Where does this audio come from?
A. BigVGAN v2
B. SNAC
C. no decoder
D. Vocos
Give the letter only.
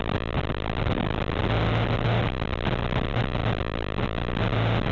C